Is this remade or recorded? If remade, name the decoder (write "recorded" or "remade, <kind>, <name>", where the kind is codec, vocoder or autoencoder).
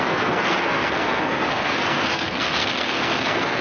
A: remade, codec, SNAC